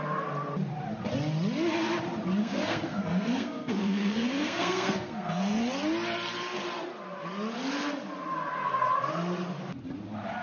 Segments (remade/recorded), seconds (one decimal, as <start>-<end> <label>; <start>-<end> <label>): 0.0-2.4 recorded; 2.4-5.6 remade; 5.6-10.4 recorded